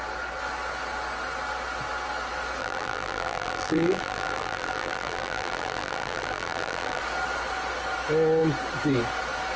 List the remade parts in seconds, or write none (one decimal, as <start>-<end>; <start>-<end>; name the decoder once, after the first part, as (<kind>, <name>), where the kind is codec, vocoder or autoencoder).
2.6-7.0 (vocoder, BigVGAN v2)